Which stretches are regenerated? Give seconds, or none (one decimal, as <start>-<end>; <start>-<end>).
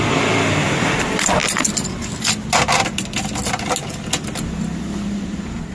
none